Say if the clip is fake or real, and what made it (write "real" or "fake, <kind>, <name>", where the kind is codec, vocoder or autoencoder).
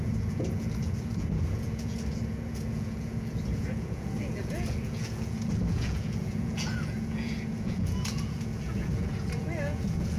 fake, vocoder, Vocos